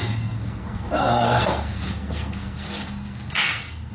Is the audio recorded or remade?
remade